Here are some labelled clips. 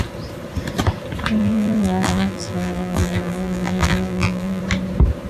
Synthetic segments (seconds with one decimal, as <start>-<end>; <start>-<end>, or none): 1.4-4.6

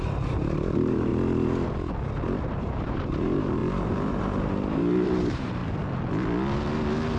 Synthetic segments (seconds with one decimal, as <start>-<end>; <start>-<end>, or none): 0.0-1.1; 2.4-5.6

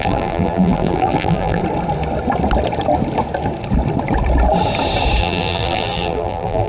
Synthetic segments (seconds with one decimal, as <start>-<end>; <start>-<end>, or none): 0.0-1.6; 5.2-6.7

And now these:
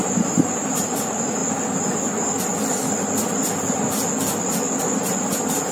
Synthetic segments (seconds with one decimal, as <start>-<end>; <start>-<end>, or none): 0.0-1.4; 4.8-5.7

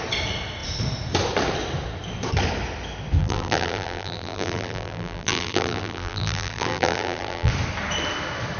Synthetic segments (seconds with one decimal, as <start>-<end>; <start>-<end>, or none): 3.2-7.5

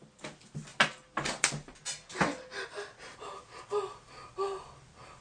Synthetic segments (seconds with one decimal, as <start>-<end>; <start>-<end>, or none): none